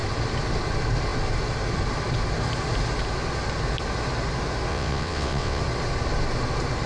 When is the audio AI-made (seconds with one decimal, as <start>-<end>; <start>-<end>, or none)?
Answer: 4.7-5.6